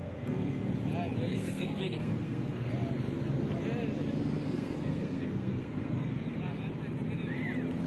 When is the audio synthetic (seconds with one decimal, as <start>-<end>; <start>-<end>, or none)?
0.0-0.7; 1.3-2.7; 4.4-6.1